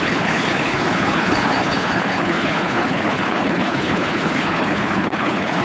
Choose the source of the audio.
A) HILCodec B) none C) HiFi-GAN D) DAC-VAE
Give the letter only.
A